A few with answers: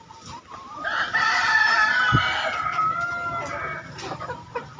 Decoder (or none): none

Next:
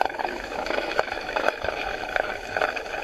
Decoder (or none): autoencoder, DAC-VAE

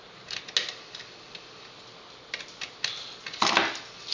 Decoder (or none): none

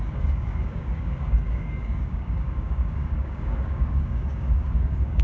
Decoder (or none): codec, DAC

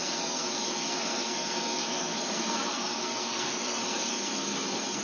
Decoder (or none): codec, SNAC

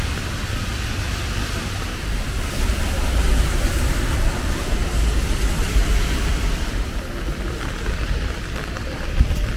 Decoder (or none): vocoder, BigVGAN v2